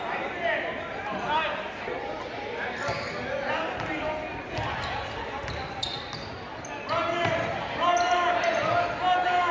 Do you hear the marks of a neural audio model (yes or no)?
no